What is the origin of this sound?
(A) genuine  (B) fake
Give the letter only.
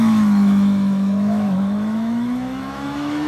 B